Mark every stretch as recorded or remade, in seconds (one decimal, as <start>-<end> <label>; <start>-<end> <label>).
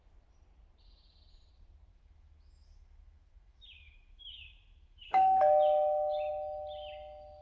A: 0.0-1.9 recorded; 1.9-6.3 remade; 6.3-7.4 recorded